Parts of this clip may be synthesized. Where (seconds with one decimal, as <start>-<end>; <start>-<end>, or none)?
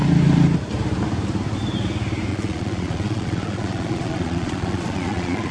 2.3-5.5